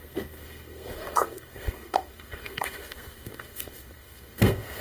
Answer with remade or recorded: remade